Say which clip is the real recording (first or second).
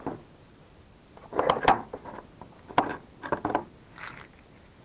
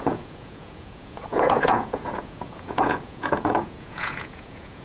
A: first